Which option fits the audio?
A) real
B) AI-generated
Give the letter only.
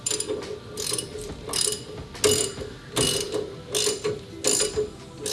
A